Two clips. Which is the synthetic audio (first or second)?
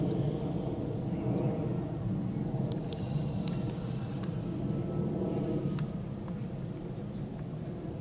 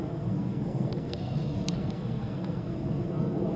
second